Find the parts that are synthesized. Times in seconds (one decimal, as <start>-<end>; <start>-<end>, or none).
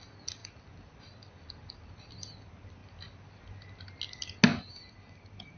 0.4-1.9; 2.8-3.8